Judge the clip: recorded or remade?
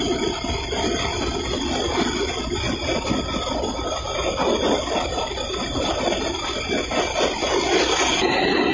recorded